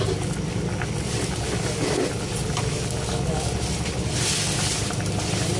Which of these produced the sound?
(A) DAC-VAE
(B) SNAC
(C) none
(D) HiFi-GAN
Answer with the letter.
C